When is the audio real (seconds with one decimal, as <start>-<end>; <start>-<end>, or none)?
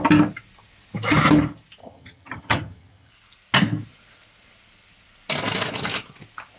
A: 0.0-1.8; 3.1-6.6